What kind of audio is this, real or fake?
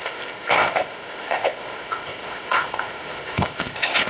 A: fake